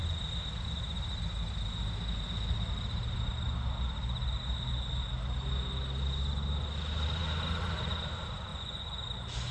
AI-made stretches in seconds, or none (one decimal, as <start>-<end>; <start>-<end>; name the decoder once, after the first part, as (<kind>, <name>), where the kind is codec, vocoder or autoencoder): 8.5-9.0 (vocoder, Vocos)